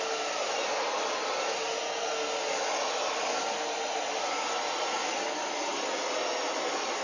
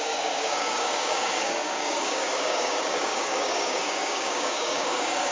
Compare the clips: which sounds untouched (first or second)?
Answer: first